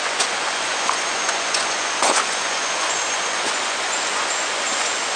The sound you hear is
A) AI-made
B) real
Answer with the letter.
A